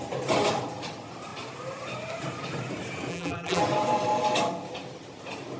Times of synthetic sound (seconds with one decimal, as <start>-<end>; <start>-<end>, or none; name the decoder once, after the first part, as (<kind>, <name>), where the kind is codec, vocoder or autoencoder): 3.1-3.6 (vocoder, BigVGAN v2)